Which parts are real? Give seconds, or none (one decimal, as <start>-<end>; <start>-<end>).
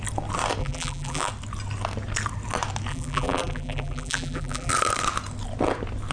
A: 0.0-0.6; 1.3-2.9; 4.7-6.1